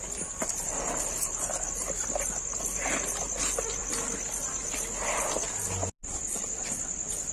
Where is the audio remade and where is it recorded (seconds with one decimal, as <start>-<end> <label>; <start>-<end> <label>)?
0.0-7.3 recorded